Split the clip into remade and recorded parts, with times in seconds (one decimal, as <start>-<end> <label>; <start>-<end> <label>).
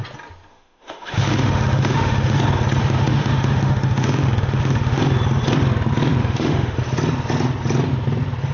0.0-0.5 recorded; 0.5-2.4 remade; 2.4-2.8 recorded; 2.8-5.0 remade; 5.0-6.2 recorded; 6.2-6.8 remade; 6.8-8.5 recorded